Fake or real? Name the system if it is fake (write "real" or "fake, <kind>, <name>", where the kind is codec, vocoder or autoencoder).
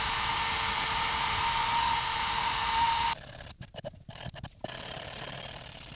fake, vocoder, BigVGAN v2